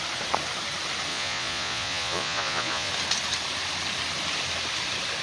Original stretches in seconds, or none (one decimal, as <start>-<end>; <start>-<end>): 0.0-1.1; 2.9-5.2

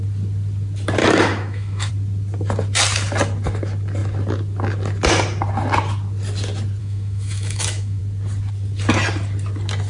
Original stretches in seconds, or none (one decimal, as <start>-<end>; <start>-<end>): 0.0-1.0; 1.9-6.8; 8.0-9.9

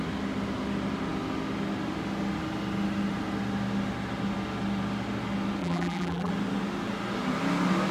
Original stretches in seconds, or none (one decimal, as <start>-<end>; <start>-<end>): 0.0-5.6; 6.3-7.9

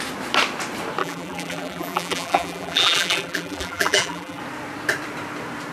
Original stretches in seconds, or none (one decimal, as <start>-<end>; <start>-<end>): 0.0-1.0; 4.4-5.7

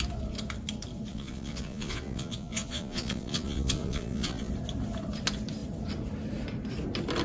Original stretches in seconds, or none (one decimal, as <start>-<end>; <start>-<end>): 0.0-1.1; 4.5-7.2